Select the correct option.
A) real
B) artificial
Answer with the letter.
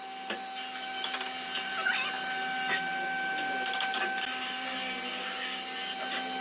A